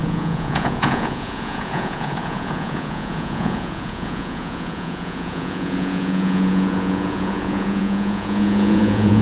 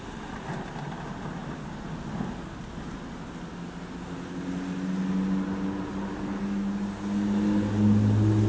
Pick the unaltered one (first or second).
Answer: second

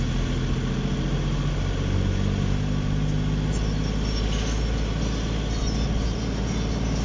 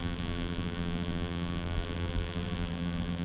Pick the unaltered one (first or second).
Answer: first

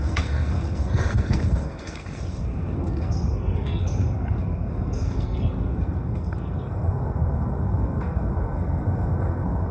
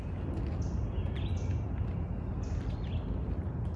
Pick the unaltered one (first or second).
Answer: second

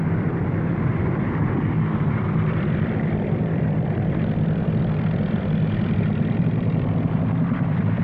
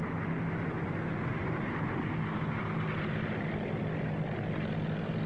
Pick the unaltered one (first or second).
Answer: second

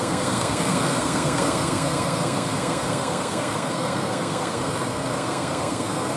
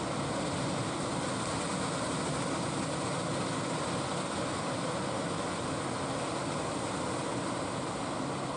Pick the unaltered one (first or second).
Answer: second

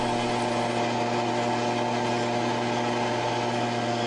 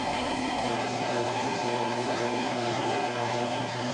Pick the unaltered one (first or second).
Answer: first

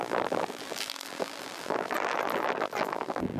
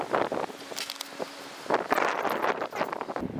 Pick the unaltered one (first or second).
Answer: second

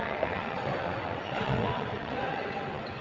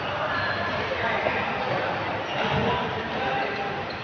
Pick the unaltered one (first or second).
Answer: second